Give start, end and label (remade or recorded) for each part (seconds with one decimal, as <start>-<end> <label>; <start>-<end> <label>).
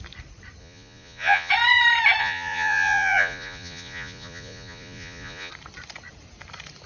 0.0-0.6 recorded; 0.6-1.5 remade; 1.5-2.2 recorded; 2.2-5.5 remade; 5.5-6.9 recorded